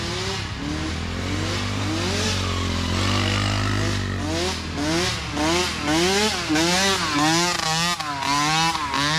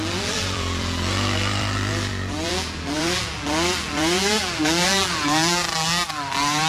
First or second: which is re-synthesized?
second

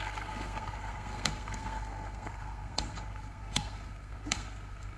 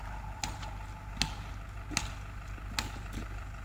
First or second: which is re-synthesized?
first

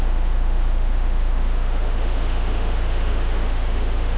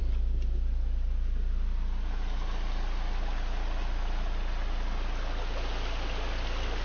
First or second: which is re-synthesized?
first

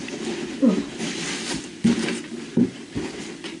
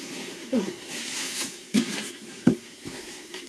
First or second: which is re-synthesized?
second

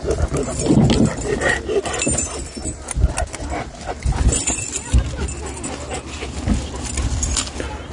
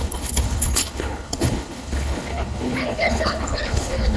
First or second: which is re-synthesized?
second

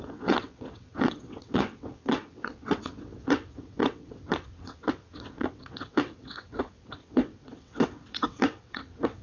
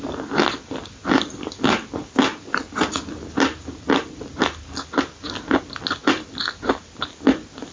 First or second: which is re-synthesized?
first